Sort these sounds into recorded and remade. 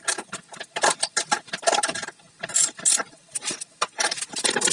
recorded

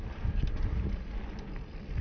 recorded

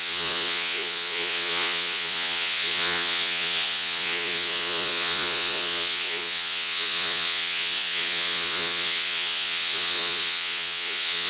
remade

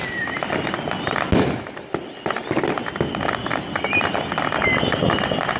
recorded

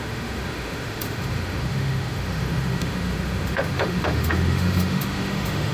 remade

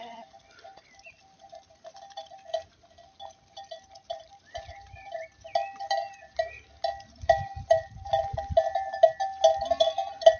recorded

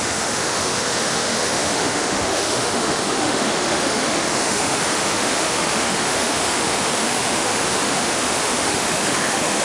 remade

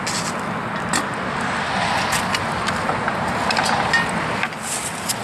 recorded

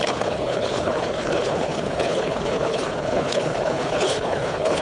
remade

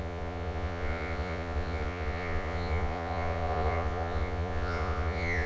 remade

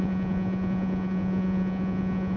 remade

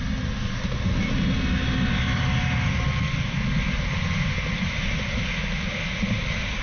recorded